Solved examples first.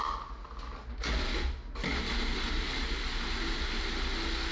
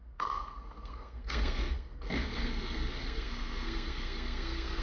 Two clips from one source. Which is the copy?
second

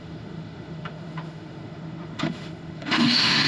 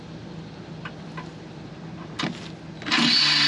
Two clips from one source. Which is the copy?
first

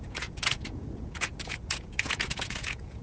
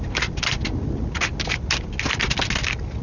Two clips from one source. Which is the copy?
first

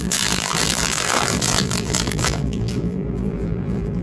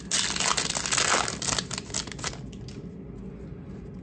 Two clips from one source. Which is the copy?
first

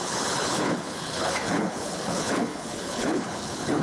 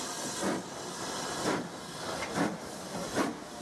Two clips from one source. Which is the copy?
first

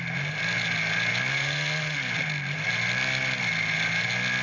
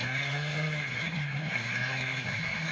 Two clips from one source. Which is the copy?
second